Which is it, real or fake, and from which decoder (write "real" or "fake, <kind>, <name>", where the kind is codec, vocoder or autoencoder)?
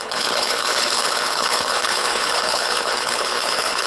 fake, codec, HILCodec